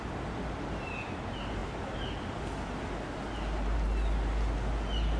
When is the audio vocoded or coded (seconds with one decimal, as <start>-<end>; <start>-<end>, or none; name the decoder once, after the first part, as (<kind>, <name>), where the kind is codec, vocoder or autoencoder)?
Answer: none